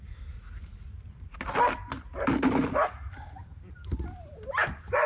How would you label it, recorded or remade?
recorded